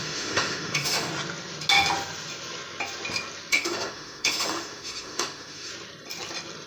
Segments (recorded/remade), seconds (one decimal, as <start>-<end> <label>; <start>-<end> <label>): 0.0-1.1 remade; 1.1-3.5 recorded; 3.5-5.7 remade; 5.7-6.7 recorded